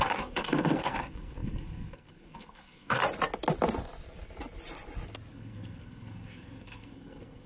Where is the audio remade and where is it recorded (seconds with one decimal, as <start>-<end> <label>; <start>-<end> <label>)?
0.0-3.0 remade; 3.0-5.3 recorded; 5.3-7.5 remade